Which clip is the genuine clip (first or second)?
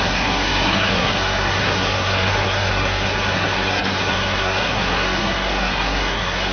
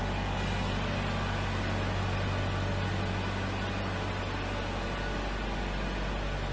second